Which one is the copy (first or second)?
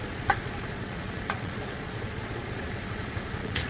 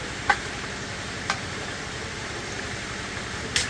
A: first